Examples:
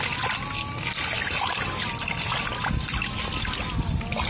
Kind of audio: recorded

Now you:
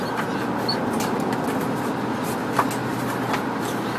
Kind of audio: recorded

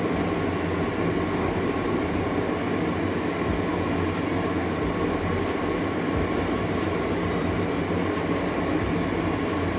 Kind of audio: recorded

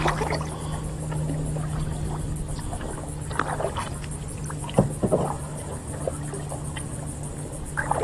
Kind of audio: recorded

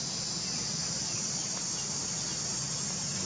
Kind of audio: recorded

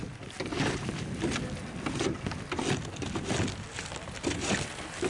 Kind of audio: recorded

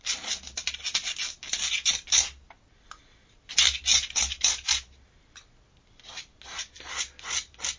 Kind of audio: recorded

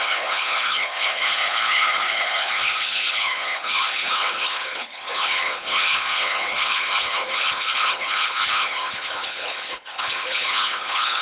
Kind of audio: remade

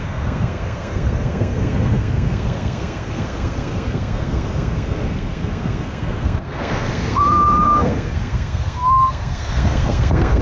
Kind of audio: remade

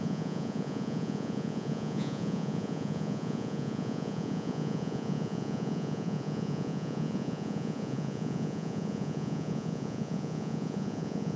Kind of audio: remade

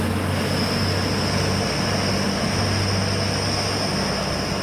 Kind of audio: recorded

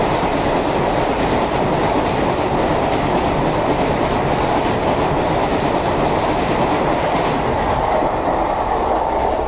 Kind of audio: recorded